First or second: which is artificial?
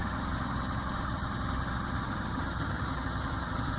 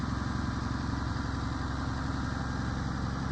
first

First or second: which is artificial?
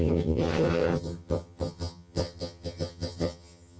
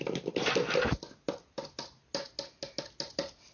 first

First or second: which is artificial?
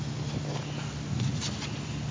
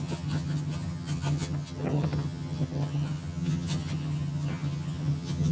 second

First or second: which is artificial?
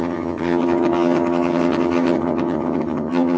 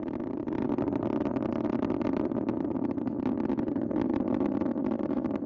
first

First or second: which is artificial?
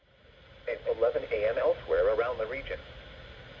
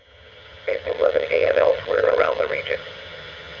second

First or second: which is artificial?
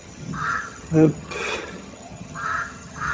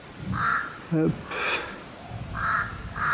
first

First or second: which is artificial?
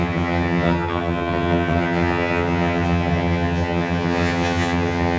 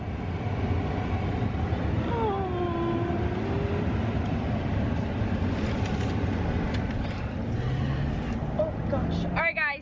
first